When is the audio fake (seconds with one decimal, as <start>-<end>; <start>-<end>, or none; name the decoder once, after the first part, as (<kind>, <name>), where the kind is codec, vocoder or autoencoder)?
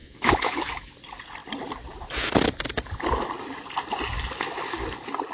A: 0.0-0.9 (autoencoder, DAC-VAE)